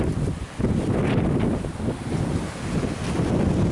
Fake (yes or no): no